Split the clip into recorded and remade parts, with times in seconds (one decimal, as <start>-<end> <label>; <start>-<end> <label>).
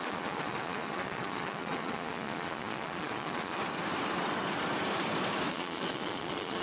0.0-3.6 remade; 3.6-5.5 recorded; 5.5-6.6 remade